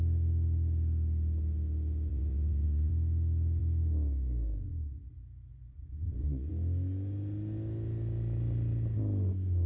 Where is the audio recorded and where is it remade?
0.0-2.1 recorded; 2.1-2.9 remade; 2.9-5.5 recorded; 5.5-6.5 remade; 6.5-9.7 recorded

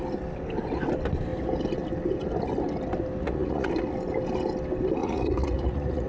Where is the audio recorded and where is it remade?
0.0-3.2 recorded; 3.2-3.7 remade; 3.7-5.0 recorded; 5.0-6.1 remade

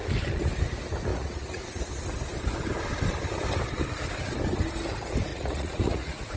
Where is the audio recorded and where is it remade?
0.0-1.1 recorded; 1.1-1.8 remade; 1.8-5.3 recorded; 5.3-6.4 remade

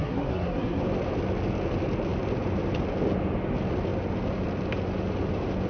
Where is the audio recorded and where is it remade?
0.0-0.8 remade; 0.8-5.7 recorded

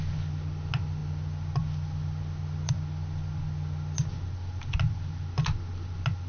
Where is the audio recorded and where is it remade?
0.0-6.3 recorded